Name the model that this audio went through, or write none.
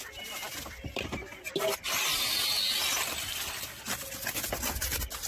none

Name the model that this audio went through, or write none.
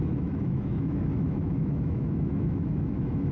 autoencoder, DAC-VAE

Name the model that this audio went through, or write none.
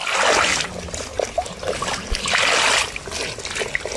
none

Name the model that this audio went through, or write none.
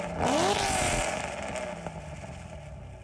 none